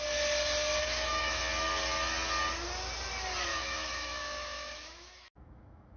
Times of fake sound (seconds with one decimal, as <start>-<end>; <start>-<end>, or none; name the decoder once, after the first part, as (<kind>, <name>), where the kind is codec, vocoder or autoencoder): 0.8-1.4 (autoencoder, DAC-VAE); 3.5-6.0